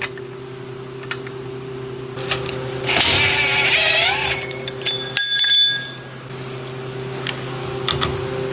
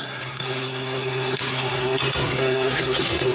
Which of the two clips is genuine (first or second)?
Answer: first